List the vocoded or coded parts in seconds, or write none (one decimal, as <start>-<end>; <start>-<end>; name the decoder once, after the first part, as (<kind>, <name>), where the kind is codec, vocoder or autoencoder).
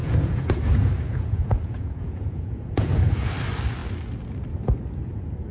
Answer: 0.0-3.3 (vocoder, Vocos)